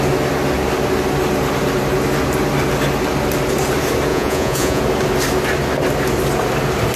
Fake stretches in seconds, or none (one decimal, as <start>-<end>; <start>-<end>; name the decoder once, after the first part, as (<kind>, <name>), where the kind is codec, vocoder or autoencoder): 4.1-4.8 (vocoder, Vocos)